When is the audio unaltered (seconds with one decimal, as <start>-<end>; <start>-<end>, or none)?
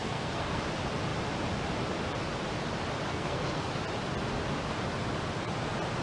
0.6-3.1; 3.7-6.0